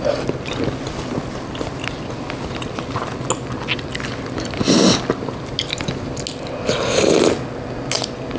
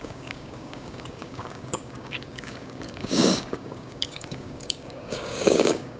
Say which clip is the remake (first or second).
second